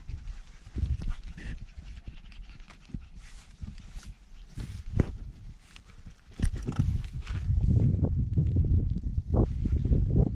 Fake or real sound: fake